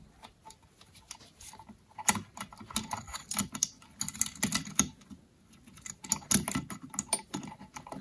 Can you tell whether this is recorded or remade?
recorded